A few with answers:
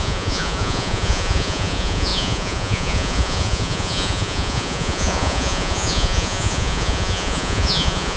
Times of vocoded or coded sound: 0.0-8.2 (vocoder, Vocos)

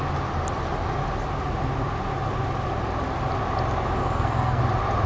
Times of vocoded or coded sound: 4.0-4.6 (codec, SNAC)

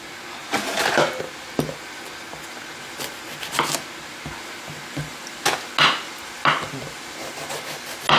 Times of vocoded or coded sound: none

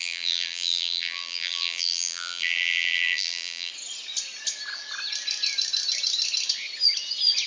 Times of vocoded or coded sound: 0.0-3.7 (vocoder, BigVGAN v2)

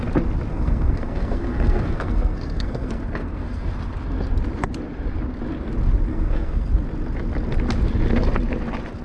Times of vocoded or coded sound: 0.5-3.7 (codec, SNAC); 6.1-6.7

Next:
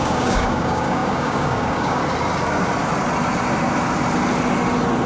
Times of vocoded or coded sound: 0.0-2.0 (codec, DAC)

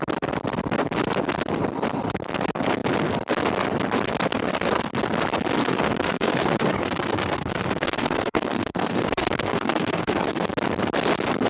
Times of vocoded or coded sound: 4.3-4.9 (codec, SNAC); 5.6-10.5

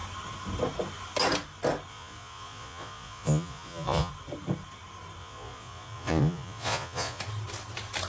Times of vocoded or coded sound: 1.9-4.1 (vocoder, Vocos); 5.2-7.2